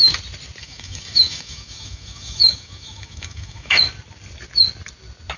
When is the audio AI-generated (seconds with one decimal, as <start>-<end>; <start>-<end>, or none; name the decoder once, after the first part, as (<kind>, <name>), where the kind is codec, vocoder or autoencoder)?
0.6-3.8 (autoencoder, DAC-VAE)